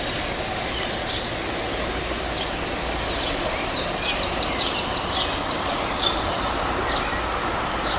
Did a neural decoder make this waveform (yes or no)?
no